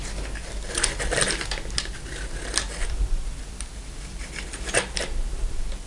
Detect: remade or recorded recorded